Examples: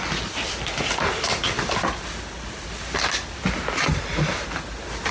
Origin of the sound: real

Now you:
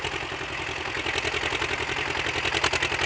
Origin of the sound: real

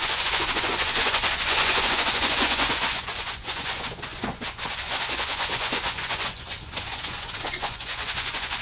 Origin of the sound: fake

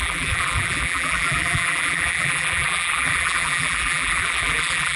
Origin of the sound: fake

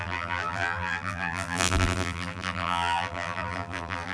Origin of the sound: fake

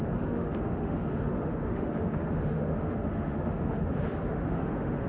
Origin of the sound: fake